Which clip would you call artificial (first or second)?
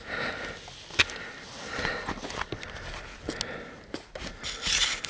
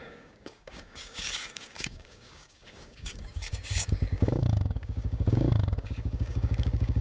second